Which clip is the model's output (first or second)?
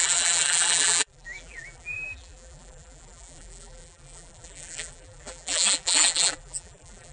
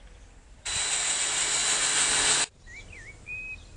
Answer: first